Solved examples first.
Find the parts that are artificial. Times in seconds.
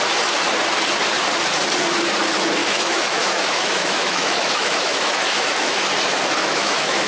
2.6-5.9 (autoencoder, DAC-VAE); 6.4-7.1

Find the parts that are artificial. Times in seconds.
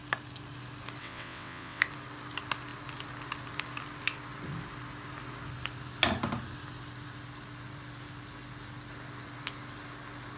1.0-1.8 (vocoder, WaveNeXt)